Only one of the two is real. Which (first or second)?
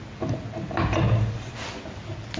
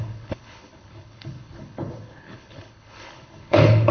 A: first